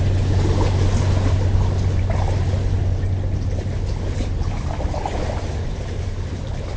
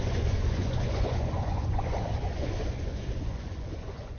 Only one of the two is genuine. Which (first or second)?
first